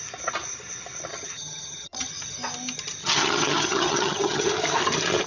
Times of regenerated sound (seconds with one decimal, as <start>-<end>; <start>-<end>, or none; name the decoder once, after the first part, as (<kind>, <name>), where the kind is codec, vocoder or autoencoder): 1.1-2.1 (vocoder, HiFi-GAN); 3.0-4.5